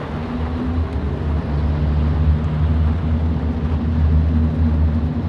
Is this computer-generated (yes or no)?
no